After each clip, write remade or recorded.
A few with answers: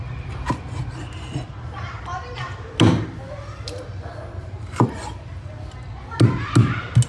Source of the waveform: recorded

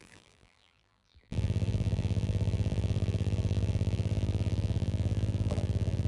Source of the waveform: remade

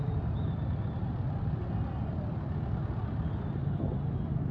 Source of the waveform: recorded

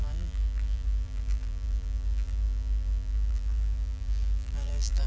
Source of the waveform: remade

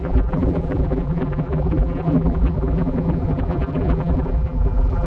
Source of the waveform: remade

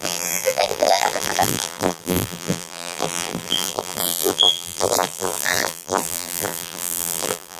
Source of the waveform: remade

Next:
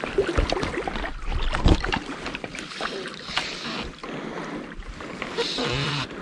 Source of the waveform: recorded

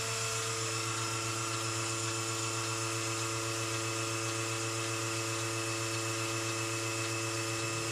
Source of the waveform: recorded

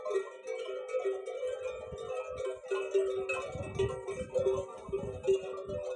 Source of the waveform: recorded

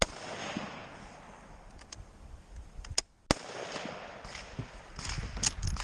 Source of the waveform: recorded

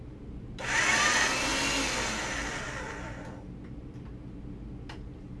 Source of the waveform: recorded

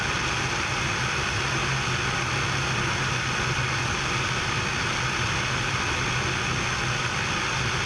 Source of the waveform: recorded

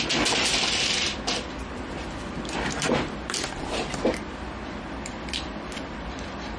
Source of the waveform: remade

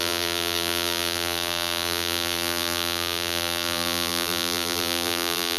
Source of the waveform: remade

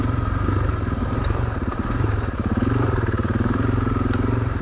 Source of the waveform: remade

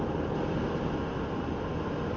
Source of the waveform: recorded